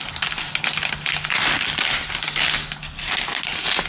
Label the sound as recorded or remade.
recorded